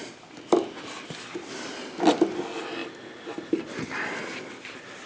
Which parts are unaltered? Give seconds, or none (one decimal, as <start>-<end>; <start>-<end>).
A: 0.0-5.1